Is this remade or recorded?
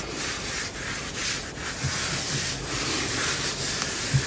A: recorded